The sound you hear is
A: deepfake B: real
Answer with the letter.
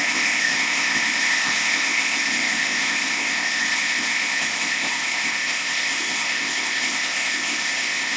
A